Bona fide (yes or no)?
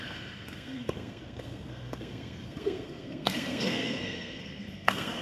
no